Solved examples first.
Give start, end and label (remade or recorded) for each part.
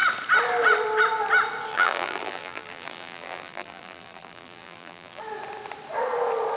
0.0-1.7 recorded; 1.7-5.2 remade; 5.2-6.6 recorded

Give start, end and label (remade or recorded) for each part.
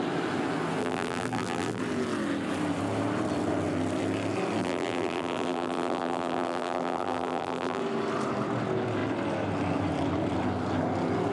0.0-0.8 recorded; 0.8-1.8 remade; 1.8-4.6 recorded; 4.6-7.8 remade; 7.8-11.3 recorded